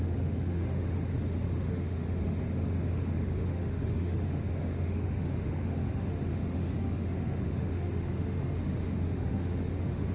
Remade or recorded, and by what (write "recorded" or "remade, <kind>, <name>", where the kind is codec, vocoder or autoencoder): remade, autoencoder, DAC-VAE